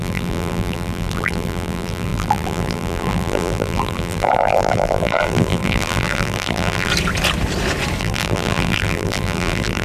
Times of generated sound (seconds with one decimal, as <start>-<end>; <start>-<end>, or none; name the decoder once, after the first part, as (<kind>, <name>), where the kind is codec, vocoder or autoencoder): 0.0-6.9 (vocoder, BigVGAN v2); 8.0-9.8